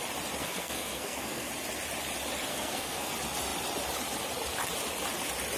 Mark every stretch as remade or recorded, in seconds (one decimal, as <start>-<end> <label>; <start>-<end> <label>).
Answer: 0.0-0.4 recorded; 0.4-1.5 remade; 1.5-2.5 recorded; 2.5-3.1 remade; 3.1-5.6 recorded